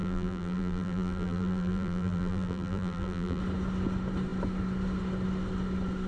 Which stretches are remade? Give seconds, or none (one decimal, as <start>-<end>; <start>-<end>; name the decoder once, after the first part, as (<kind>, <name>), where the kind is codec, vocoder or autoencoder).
0.0-3.4 (vocoder, BigVGAN v2)